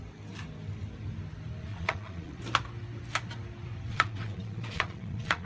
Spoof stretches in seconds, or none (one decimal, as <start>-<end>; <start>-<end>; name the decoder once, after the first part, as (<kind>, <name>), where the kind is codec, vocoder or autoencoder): 1.7-2.4 (vocoder, Vocos); 3.9-5.5

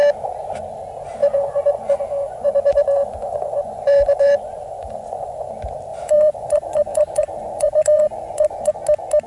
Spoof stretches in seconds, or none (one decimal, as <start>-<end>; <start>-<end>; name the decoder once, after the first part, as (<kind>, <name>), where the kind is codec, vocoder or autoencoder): 1.2-5.5 (vocoder, Vocos); 5.9-8.7

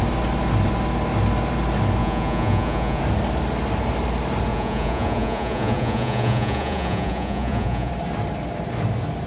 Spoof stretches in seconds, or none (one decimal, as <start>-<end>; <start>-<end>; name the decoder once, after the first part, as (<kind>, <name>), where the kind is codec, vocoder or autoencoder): 2.0-3.0 (vocoder, Vocos); 4.5-7.9

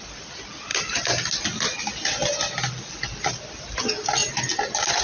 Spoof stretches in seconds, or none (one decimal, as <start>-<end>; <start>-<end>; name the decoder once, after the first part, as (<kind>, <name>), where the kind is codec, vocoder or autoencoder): none

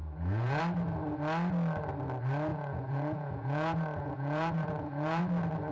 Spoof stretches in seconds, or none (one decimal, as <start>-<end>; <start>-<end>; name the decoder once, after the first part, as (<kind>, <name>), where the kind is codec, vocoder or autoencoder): 0.0-0.6 (vocoder, Vocos); 2.5-5.2

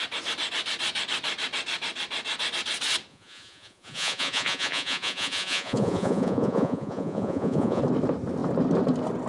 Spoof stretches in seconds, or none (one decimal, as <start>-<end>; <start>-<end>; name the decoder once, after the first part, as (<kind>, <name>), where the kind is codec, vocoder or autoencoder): 3.1-7.8 (vocoder, Vocos)

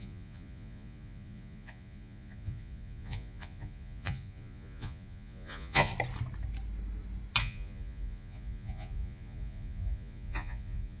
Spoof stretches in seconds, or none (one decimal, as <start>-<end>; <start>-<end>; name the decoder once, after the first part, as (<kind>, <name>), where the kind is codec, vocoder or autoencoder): 0.0-5.9 (vocoder, Vocos); 7.4-11.0